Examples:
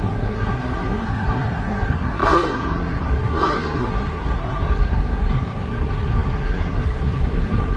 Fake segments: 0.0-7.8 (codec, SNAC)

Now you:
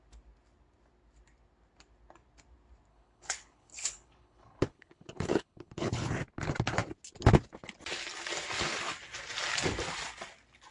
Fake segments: 2.9-6.1 (codec, HILCodec)